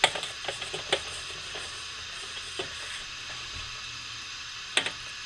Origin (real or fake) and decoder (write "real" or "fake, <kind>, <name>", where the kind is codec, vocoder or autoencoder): real